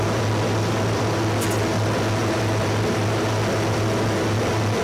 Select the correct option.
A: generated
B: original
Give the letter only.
B